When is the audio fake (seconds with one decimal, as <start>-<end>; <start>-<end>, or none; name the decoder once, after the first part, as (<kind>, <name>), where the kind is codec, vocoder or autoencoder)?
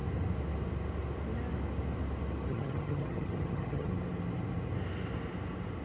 2.5-3.9 (vocoder, HiFi-GAN)